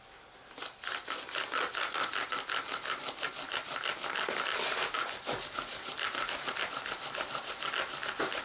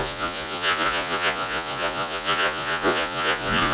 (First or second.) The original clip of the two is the first